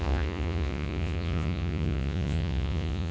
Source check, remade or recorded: remade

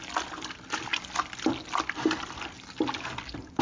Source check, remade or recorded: recorded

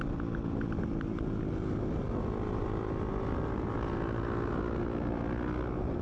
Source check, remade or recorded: recorded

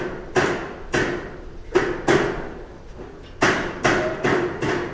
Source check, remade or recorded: recorded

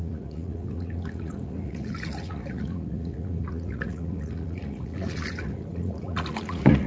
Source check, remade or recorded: remade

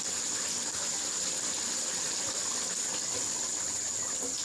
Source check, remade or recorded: recorded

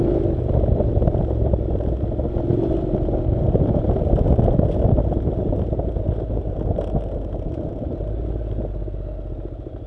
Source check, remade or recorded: recorded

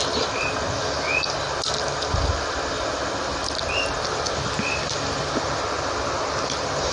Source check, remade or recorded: recorded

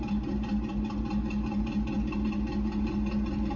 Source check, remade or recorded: recorded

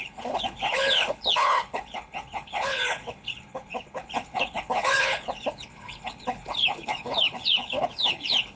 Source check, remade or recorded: remade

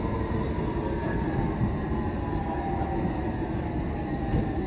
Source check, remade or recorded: recorded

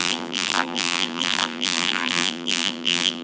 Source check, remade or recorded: remade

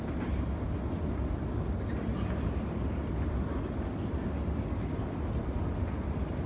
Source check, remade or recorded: recorded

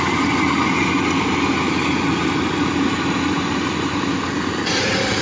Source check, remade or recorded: recorded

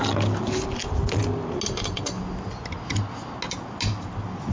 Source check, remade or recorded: recorded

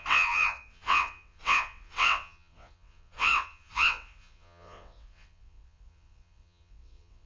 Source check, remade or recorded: remade